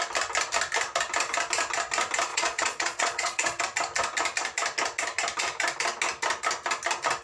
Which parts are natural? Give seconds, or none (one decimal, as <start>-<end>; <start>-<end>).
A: 0.0-2.3; 3.6-7.2

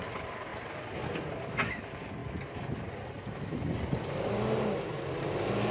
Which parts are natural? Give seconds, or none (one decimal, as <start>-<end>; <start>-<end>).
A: 0.0-5.7